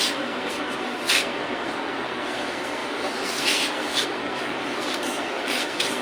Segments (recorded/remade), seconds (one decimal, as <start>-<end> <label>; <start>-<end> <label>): 0.0-6.0 remade